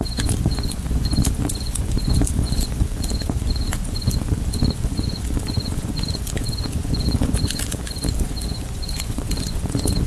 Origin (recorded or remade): remade